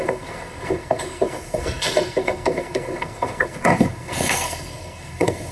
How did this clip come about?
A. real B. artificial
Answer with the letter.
B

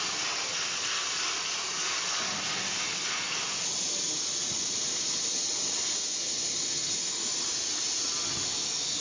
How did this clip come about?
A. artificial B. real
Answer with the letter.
B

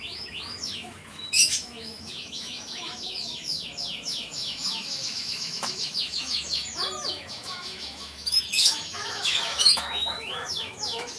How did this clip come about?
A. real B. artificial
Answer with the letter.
B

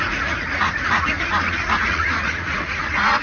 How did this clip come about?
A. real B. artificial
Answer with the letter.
B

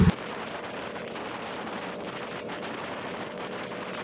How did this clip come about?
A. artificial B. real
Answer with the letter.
B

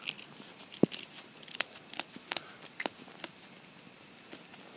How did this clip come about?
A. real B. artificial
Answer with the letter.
A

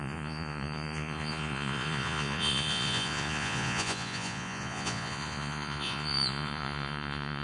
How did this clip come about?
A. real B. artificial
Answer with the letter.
B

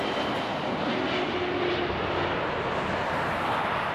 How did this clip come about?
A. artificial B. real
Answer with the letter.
B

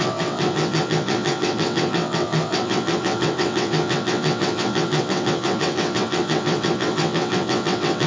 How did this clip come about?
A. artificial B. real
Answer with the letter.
A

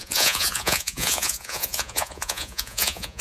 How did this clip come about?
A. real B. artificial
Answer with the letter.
B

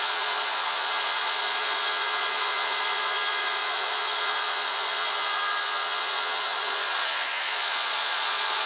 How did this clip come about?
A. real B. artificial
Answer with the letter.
B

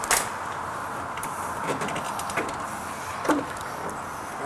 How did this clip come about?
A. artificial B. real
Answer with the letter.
B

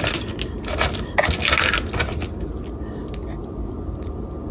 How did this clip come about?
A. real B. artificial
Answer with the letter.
A